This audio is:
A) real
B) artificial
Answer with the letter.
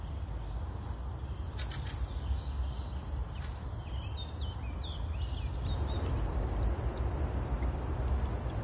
A